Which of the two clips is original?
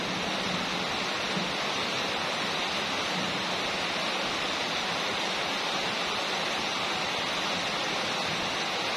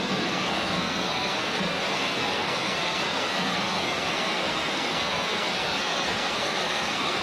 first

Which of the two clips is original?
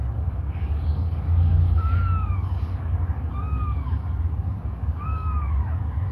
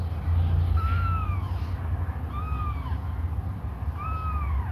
second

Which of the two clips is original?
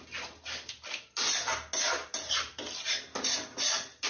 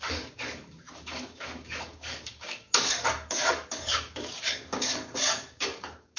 first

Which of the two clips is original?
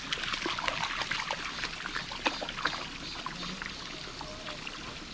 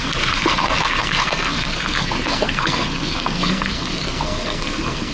first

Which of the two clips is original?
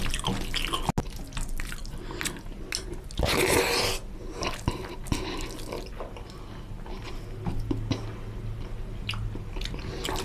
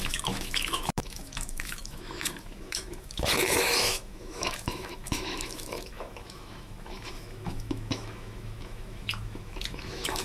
first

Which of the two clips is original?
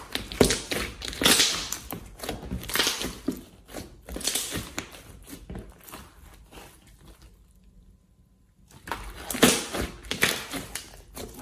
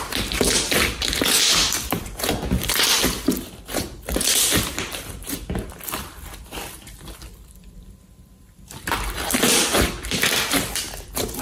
first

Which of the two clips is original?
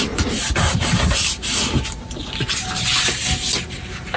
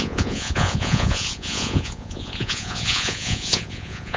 first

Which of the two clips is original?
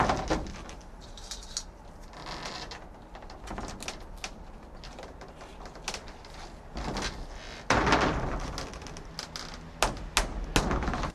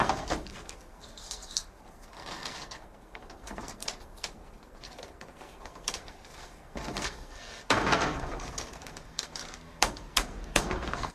first